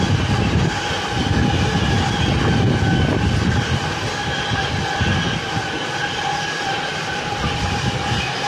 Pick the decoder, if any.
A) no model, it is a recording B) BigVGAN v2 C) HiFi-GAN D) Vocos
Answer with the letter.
A